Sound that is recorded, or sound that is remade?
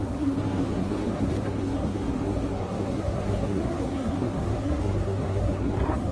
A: remade